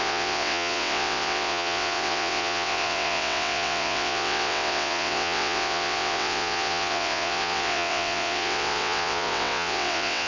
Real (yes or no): no